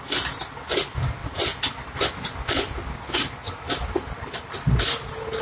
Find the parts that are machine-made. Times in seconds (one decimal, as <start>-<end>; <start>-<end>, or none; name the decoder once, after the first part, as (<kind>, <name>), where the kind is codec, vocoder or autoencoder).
none